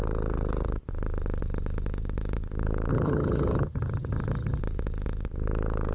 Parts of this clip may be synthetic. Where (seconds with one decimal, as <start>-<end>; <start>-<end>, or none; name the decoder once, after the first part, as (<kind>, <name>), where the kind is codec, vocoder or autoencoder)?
2.9-4.6 (vocoder, HiFi-GAN)